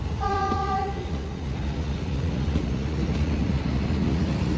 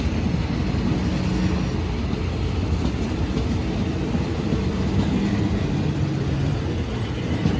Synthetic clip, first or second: first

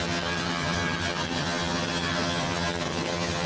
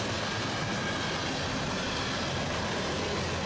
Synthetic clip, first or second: first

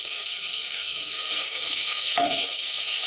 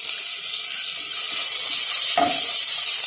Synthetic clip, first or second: first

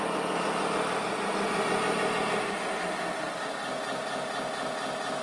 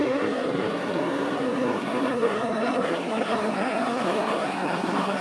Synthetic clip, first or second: second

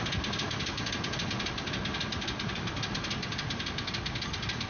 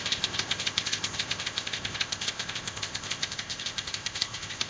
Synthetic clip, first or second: second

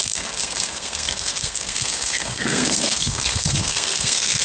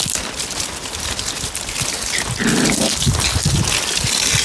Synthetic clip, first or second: first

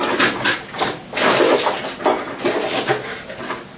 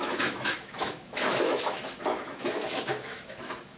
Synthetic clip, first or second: second